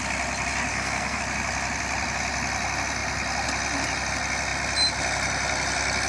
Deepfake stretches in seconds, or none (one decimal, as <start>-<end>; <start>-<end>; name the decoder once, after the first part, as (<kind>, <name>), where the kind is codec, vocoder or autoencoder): 0.7-1.2 (codec, SNAC)